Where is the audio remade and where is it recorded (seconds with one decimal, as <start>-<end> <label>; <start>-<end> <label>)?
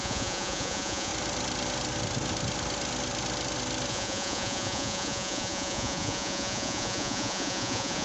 0.0-1.1 remade; 1.1-3.9 recorded; 3.9-8.0 remade